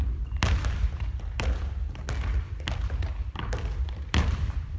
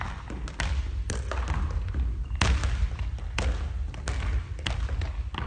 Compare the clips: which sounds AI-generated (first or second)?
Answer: first